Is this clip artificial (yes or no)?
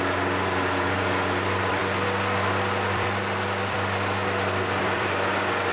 yes